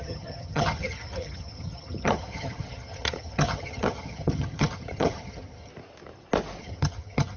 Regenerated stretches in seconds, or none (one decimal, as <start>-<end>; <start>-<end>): 0.0-5.7; 6.6-7.4

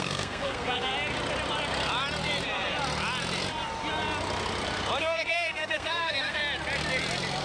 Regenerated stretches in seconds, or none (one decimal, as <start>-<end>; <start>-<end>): 0.0-0.9; 5.0-6.4

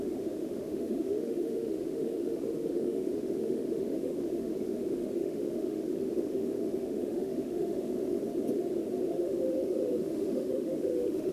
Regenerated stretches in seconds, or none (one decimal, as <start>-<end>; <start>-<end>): 0.0-8.2; 9.1-11.3

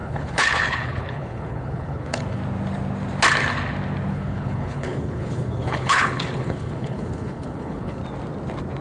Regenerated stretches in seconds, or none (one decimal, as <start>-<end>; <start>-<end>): 0.0-2.4; 4.1-8.0